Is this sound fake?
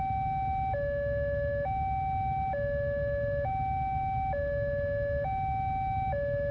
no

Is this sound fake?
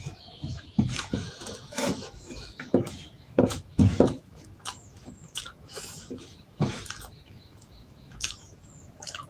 yes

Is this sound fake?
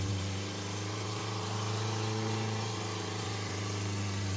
yes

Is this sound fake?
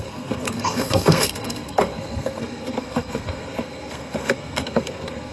yes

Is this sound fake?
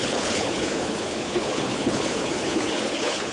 yes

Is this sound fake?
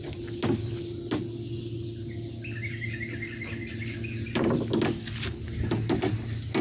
no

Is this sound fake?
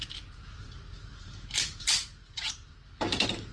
yes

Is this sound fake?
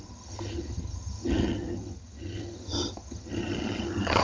yes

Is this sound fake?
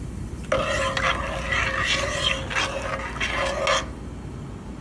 no